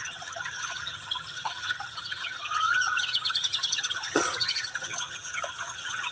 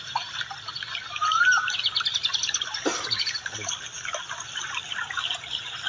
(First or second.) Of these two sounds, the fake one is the first